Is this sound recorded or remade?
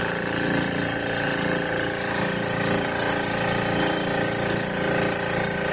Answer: recorded